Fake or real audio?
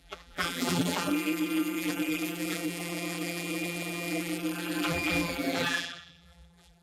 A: fake